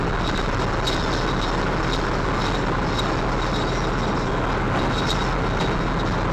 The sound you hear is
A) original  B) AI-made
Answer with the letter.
A